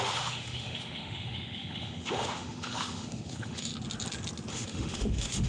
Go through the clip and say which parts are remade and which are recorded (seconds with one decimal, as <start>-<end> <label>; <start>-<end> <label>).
0.0-3.7 remade; 3.7-4.5 recorded; 4.5-5.5 remade